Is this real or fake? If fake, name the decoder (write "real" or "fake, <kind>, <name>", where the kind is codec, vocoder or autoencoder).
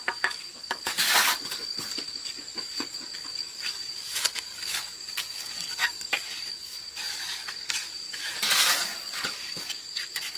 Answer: fake, codec, DAC